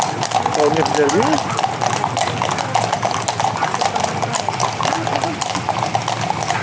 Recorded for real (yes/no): yes